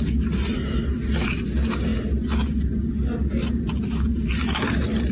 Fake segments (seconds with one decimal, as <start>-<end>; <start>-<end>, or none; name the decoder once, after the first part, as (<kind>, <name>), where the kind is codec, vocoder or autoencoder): none

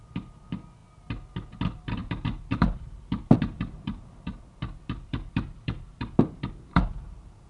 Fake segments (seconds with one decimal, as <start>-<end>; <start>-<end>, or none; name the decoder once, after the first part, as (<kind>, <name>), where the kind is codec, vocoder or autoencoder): 2.0-6.5 (vocoder, BigVGAN v2)